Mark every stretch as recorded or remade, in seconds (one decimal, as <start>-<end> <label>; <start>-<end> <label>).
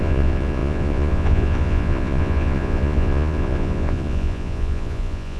0.0-5.4 remade